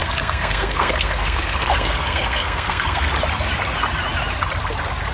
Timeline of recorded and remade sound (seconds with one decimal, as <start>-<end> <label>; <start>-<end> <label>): 0.0-3.1 remade; 3.1-5.1 recorded